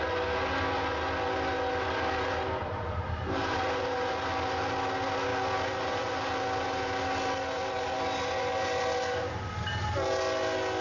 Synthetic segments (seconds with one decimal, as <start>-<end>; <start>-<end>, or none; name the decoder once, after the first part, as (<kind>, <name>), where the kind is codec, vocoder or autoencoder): 2.6-3.6 (vocoder, BigVGAN v2)